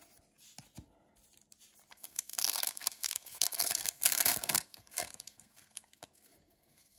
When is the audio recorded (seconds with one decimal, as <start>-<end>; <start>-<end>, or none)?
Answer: 0.0-1.9